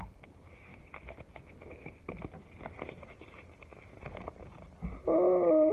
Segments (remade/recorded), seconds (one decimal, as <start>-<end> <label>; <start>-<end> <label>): 0.0-5.7 recorded